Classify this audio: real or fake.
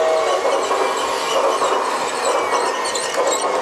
real